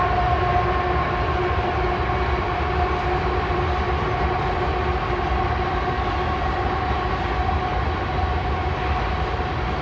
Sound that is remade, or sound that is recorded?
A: recorded